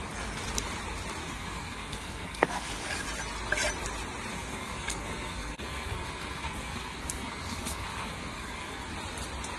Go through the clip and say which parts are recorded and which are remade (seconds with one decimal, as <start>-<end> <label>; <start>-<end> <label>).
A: 0.0-1.2 recorded; 1.2-2.7 remade; 2.7-4.3 recorded; 4.3-8.9 remade; 8.9-9.6 recorded

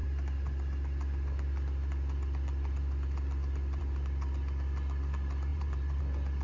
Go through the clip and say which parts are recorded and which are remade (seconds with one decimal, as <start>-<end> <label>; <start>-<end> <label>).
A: 0.0-5.5 recorded; 5.5-6.0 remade; 6.0-6.4 recorded

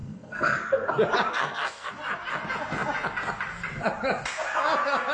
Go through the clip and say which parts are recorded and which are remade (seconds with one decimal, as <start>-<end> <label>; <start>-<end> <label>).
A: 0.0-0.9 remade; 0.9-1.3 recorded; 1.3-1.9 remade; 1.9-5.1 recorded

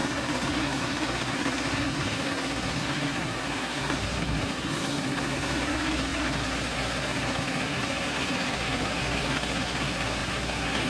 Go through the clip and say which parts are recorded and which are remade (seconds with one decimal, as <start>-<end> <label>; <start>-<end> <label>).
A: 0.0-10.9 remade

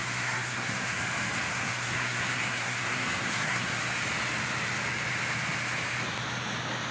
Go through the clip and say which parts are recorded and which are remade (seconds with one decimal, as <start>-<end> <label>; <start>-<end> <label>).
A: 0.0-1.0 remade; 1.0-1.5 recorded; 1.5-3.8 remade; 3.8-6.9 recorded